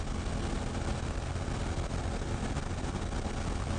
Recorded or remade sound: recorded